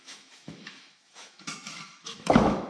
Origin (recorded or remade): remade